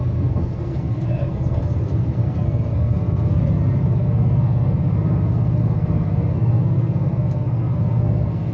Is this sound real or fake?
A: fake